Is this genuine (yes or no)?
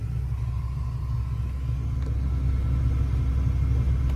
yes